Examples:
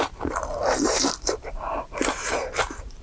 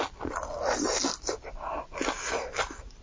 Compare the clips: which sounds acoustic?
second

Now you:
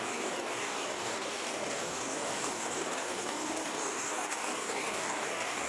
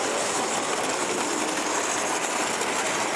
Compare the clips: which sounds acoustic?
second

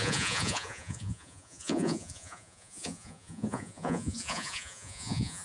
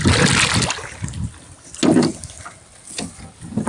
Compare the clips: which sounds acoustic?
second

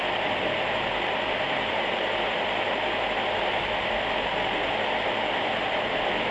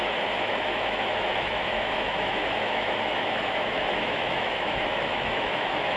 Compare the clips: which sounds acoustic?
first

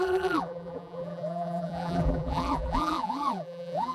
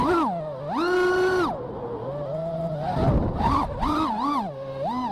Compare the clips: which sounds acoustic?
second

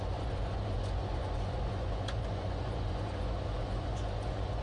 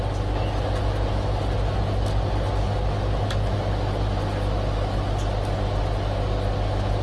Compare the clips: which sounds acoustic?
second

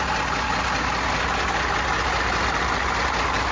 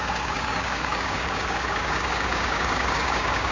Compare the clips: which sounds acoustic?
first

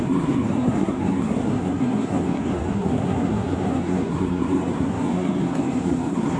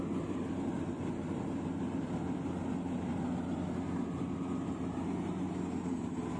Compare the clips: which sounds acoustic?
second